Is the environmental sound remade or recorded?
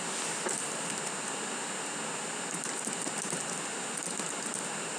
recorded